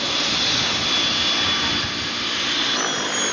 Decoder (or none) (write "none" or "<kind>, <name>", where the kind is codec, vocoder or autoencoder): none